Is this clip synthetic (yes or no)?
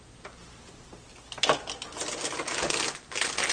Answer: no